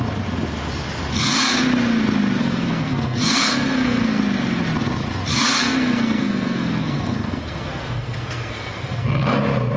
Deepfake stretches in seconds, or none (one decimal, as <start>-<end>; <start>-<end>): 2.4-4.2; 5.3-9.4